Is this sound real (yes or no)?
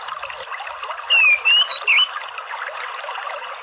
yes